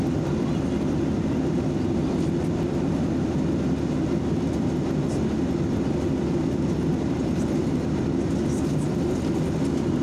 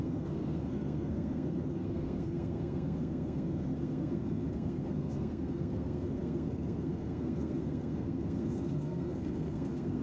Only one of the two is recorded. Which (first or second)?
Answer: first